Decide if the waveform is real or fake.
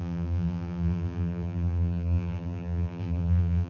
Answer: fake